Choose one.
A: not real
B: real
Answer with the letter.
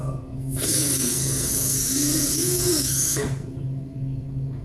A